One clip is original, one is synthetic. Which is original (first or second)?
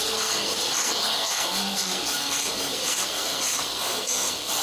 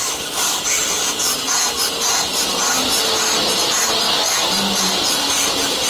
second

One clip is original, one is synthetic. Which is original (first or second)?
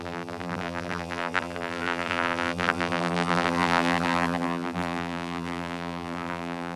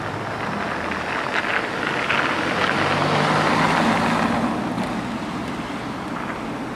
second